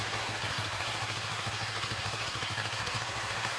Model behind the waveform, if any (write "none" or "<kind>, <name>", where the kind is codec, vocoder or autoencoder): codec, SNAC